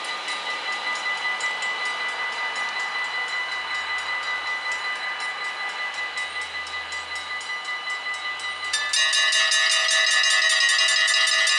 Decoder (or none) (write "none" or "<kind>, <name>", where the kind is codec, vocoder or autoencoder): none